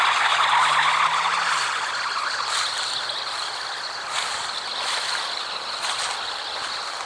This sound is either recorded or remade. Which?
recorded